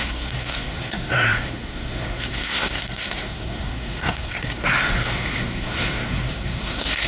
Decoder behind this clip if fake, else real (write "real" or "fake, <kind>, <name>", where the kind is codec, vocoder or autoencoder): fake, codec, SNAC